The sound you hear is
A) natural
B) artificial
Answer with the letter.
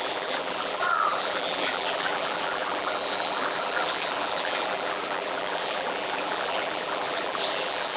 B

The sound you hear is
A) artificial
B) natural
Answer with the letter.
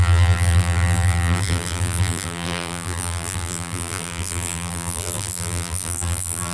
A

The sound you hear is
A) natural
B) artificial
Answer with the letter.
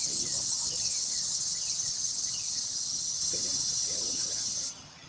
B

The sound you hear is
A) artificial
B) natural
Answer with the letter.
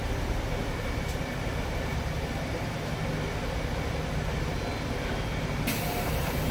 B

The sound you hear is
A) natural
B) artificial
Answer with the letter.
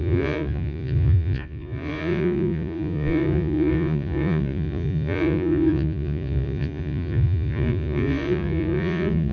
B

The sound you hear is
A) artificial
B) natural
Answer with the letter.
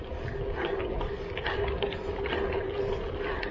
B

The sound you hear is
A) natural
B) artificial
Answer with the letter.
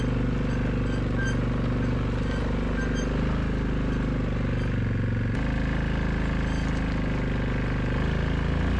A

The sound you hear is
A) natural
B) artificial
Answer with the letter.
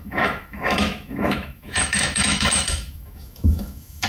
B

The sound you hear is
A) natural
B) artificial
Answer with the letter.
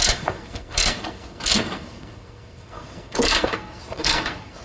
B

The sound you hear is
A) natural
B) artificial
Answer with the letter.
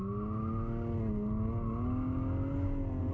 A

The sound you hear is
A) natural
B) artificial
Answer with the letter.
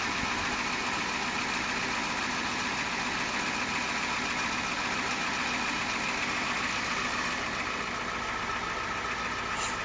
A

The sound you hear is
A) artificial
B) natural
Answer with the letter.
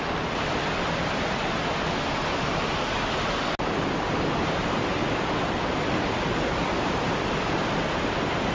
B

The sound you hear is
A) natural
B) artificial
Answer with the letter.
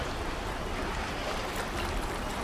A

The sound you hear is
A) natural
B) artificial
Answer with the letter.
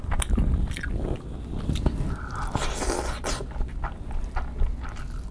A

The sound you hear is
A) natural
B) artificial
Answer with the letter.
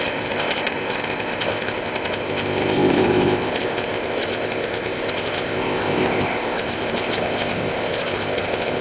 B